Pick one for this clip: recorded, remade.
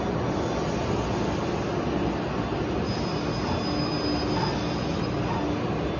recorded